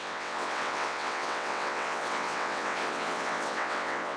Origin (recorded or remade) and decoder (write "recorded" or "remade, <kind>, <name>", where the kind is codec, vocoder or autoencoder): remade, vocoder, WaveNeXt